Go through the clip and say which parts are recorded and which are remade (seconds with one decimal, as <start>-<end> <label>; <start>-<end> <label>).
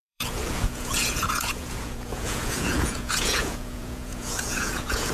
0.0-5.1 remade